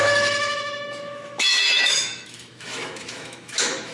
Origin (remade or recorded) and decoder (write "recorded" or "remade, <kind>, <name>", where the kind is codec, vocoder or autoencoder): remade, autoencoder, DAC-VAE